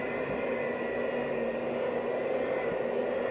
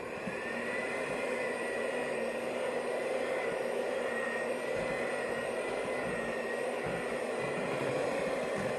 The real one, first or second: first